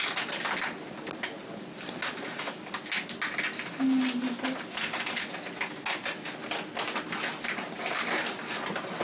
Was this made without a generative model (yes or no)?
yes